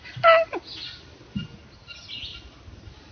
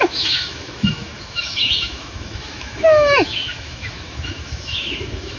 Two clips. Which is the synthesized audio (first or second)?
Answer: second